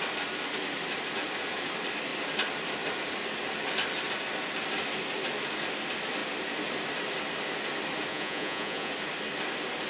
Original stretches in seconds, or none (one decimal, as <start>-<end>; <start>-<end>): 0.0-8.1; 8.9-9.9